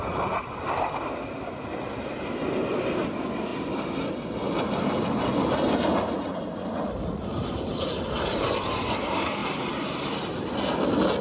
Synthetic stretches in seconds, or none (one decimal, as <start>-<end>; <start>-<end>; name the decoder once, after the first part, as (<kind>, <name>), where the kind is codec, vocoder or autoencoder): none